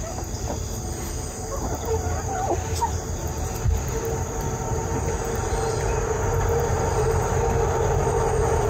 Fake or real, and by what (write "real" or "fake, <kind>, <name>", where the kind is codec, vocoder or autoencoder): fake, vocoder, BigVGAN v2